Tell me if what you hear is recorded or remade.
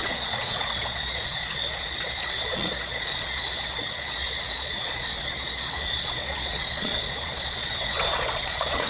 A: remade